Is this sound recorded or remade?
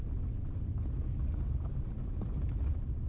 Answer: recorded